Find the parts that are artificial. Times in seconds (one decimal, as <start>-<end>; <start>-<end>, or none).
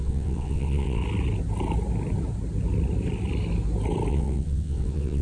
0.0-1.0; 4.1-5.2